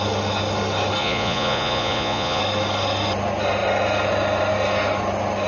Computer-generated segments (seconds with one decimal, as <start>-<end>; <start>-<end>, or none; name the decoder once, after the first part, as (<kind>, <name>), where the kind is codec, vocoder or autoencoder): 1.0-2.4 (vocoder, Vocos)